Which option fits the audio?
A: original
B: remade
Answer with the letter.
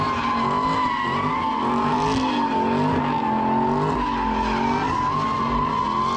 A